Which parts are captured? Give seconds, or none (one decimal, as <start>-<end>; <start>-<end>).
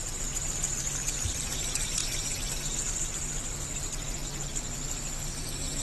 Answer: 0.0-5.8